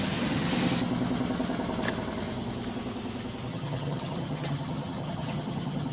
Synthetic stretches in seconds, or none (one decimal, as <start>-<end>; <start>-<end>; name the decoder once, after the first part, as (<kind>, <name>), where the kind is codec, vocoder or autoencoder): 0.0-0.5 (vocoder, HiFi-GAN); 3.5-5.9